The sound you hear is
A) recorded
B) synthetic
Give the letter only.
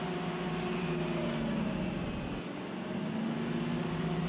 A